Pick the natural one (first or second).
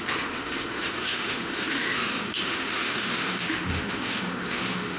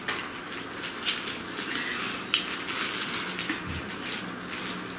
second